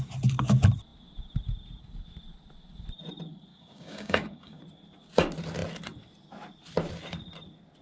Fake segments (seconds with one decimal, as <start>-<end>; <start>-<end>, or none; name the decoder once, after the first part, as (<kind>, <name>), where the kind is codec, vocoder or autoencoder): 3.5-4.6 (codec, DAC)